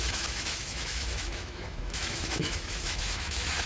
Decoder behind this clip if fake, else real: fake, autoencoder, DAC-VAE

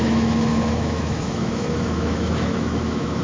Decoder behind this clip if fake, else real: fake, autoencoder, DAC-VAE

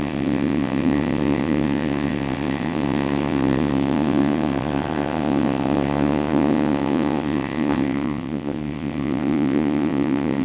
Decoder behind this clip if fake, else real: fake, vocoder, WaveNeXt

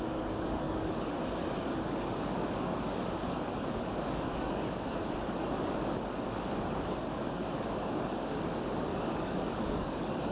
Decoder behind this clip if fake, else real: fake, codec, DAC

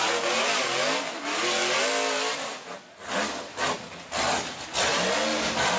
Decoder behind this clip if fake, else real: real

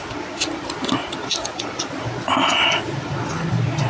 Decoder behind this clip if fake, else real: real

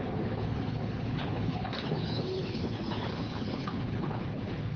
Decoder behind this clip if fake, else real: fake, codec, HILCodec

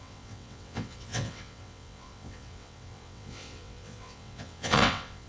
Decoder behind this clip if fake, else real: fake, vocoder, WaveNeXt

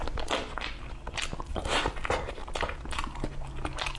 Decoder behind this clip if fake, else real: real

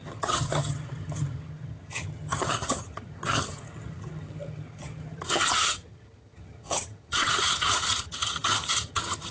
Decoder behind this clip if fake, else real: fake, vocoder, HiFi-GAN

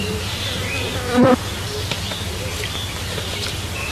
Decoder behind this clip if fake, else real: real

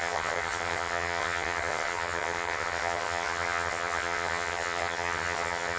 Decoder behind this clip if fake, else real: fake, vocoder, HiFi-GAN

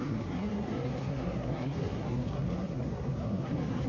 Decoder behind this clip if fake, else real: fake, codec, SNAC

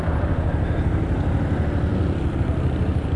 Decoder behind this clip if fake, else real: real